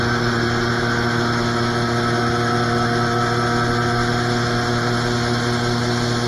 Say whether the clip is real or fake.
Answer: real